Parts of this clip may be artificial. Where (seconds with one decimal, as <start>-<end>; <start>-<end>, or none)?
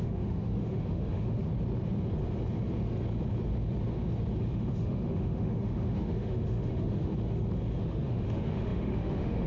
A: 0.0-1.4; 4.4-7.1; 7.8-9.5